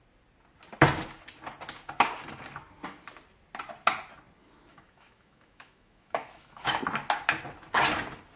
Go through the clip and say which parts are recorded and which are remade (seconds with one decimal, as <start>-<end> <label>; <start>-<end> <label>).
0.0-4.4 recorded; 4.4-6.8 remade; 6.8-8.4 recorded